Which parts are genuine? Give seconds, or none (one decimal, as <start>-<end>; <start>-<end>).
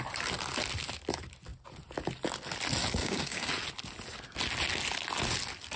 0.0-3.0; 3.5-5.8